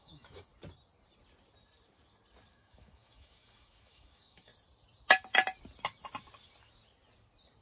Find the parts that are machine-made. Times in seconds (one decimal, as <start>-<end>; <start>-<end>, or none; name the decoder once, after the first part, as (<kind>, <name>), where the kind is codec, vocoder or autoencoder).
0.0-0.5 (autoencoder, DAC-VAE); 2.5-4.5